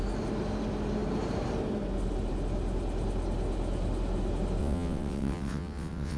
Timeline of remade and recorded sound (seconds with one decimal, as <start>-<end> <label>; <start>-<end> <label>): 0.0-4.6 recorded; 4.6-6.2 remade